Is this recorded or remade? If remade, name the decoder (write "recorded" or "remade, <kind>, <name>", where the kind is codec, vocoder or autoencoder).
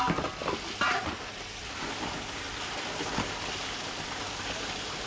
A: recorded